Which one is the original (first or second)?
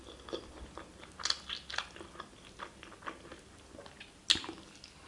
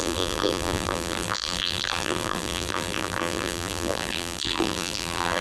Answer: first